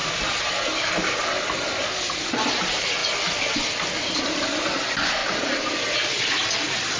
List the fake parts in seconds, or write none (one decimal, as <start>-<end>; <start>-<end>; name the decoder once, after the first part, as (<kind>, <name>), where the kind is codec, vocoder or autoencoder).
2.6-3.0 (vocoder, BigVGAN v2); 4.0-5.2; 6.2-7.0